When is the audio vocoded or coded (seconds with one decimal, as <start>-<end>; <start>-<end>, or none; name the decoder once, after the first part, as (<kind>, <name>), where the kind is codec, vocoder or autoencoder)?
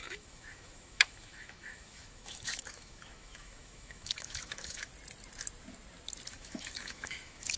0.0-4.9 (autoencoder, DAC-VAE); 6.3-7.6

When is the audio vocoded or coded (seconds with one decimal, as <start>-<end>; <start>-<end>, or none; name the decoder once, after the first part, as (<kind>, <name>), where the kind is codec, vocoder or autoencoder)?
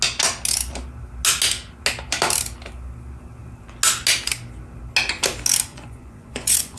5.7-6.8 (vocoder, Vocos)